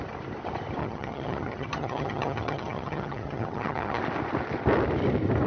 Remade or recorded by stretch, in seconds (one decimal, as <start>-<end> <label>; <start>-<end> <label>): 0.0-0.8 recorded; 0.8-4.0 remade; 4.0-5.5 recorded